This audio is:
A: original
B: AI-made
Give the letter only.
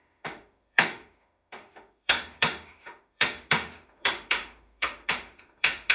B